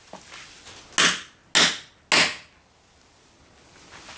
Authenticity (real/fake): real